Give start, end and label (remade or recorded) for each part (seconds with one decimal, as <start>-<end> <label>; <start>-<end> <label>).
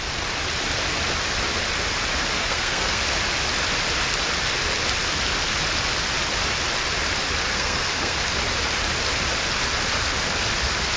0.0-2.4 recorded; 2.4-3.0 remade; 3.0-7.5 recorded; 7.5-8.2 remade; 8.2-11.0 recorded